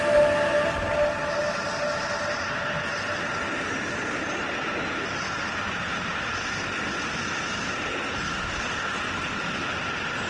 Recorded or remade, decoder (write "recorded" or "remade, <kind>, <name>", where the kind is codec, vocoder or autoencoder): recorded